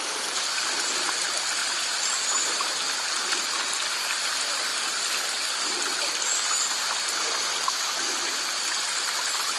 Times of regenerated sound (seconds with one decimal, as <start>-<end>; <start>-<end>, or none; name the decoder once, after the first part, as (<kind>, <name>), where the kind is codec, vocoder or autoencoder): 1.6-2.6 (vocoder, BigVGAN v2)